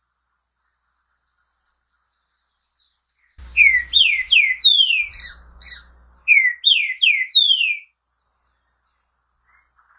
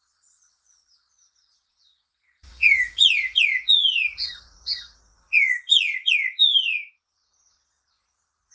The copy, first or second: second